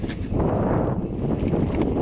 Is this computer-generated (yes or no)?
no